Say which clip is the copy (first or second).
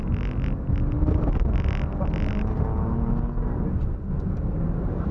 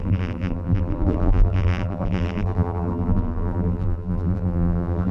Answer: second